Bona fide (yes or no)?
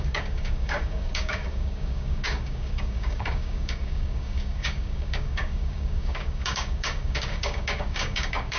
no